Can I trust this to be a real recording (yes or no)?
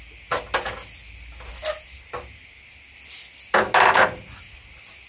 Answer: yes